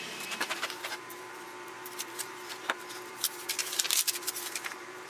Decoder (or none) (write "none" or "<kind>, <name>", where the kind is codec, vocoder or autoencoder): vocoder, BigVGAN v2